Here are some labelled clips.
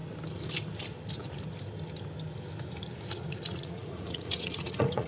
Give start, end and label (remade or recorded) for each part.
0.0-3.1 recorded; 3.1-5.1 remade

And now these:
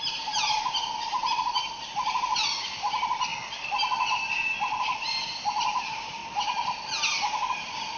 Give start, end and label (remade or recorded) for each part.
0.0-3.3 remade; 3.3-4.8 recorded; 4.8-6.2 remade; 6.2-7.5 recorded; 7.5-8.0 remade

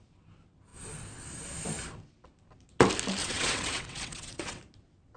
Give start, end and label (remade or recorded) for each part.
0.0-3.2 recorded; 3.2-4.6 remade; 4.6-5.2 recorded

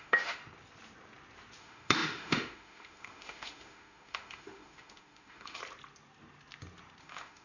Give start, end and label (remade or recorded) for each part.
0.0-0.4 remade; 0.4-1.6 recorded; 1.6-5.6 remade; 5.6-7.0 recorded; 7.0-7.4 remade